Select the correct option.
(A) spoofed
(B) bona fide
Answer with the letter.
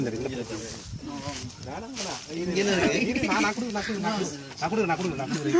B